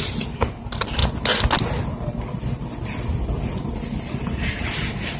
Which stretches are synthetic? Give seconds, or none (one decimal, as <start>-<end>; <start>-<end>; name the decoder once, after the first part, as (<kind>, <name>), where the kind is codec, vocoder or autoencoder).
0.0-1.0 (vocoder, BigVGAN v2); 4.1-5.2